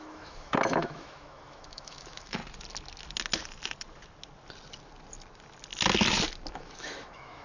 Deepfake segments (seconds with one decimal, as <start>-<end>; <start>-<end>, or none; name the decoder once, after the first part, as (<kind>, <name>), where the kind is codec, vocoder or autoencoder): 0.0-2.4 (autoencoder, DAC-VAE); 6.5-7.4